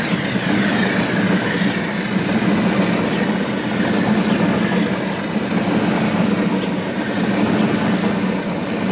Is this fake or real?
real